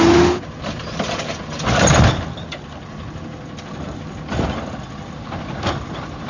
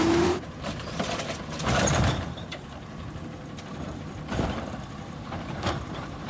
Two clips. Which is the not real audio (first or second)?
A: second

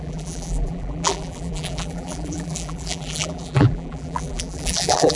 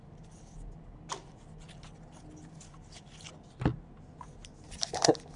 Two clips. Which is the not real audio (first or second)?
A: first